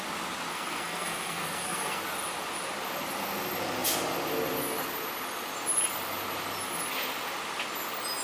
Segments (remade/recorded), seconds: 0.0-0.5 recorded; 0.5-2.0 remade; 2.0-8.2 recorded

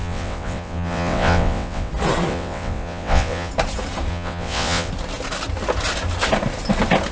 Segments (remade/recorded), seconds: 0.0-1.9 remade; 1.9-2.3 recorded; 2.3-3.5 remade; 3.5-4.1 recorded; 4.1-4.9 remade; 4.9-7.1 recorded

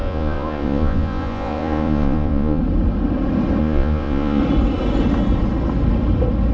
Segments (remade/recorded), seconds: 0.0-2.6 remade; 2.6-3.6 recorded; 3.6-4.4 remade; 4.4-6.5 recorded

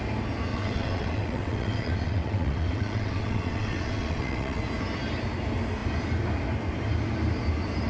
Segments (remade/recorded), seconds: 0.0-0.5 recorded; 0.5-4.6 remade; 4.6-7.9 recorded